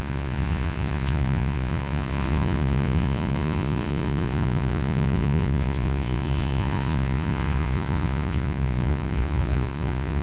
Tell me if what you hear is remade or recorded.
remade